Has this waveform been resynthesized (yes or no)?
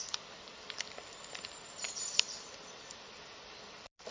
yes